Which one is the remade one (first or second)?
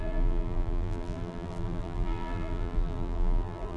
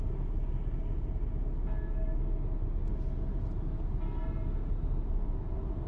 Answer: first